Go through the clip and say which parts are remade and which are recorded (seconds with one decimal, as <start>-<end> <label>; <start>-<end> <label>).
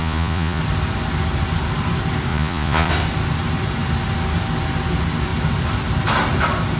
0.0-0.6 remade; 0.6-2.3 recorded; 2.3-2.9 remade; 2.9-6.8 recorded